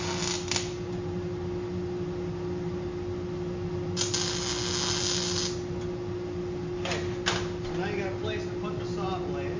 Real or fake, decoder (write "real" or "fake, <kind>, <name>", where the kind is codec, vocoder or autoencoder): real